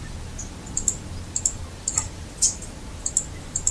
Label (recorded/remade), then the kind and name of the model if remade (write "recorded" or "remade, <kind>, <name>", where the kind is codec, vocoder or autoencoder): recorded